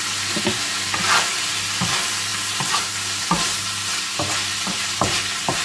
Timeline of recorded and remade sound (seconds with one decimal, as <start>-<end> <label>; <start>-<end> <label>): 0.0-2.3 recorded; 2.3-3.9 remade; 3.9-4.5 recorded; 4.5-5.6 remade